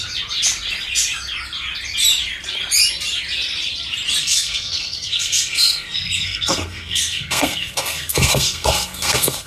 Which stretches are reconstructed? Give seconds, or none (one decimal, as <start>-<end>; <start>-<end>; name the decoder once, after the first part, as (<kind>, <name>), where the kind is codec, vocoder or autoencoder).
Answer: 4.2-9.5 (codec, SNAC)